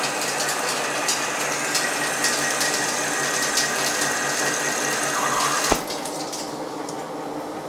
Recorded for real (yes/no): yes